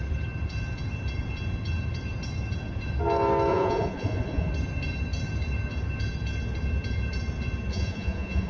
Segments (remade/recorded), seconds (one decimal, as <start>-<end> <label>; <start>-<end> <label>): 0.0-3.5 recorded; 3.5-4.5 remade; 4.5-7.7 recorded; 7.7-8.5 remade